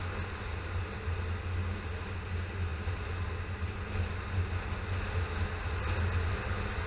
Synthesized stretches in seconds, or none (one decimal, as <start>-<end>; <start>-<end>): none